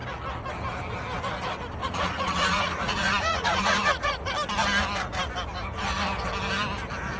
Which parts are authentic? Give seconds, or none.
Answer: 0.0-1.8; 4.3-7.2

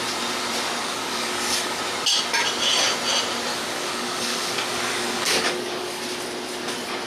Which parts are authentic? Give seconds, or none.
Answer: 0.0-0.8; 1.8-3.5; 6.0-7.1

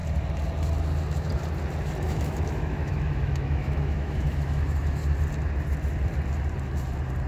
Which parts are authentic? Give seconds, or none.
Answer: 0.0-2.0; 5.0-7.3